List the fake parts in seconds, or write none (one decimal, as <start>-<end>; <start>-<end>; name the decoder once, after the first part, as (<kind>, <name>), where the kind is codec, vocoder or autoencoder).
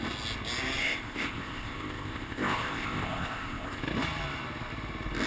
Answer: 0.8-3.8 (codec, ZipCodec)